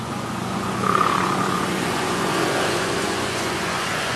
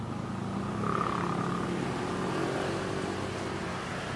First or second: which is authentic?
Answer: second